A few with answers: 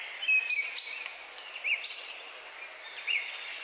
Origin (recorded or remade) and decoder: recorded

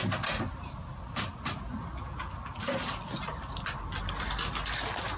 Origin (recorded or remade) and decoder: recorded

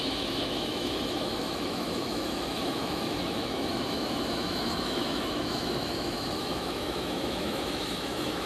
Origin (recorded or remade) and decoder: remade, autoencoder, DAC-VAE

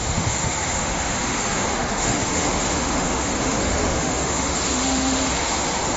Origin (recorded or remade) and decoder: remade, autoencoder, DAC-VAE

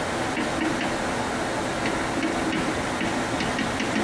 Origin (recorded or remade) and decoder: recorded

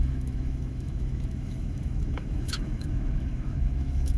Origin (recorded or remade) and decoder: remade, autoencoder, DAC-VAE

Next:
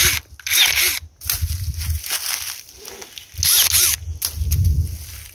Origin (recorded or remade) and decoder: recorded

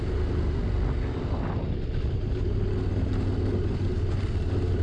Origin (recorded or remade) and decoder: recorded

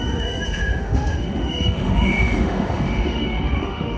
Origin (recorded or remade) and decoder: remade, autoencoder, DAC-VAE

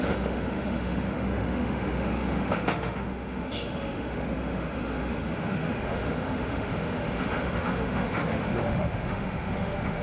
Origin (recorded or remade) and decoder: remade, autoencoder, DAC-VAE